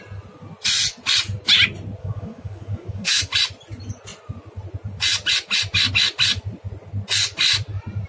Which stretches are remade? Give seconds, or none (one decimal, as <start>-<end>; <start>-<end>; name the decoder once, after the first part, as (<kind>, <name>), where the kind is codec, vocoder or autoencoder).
2.0-3.2 (codec, DAC)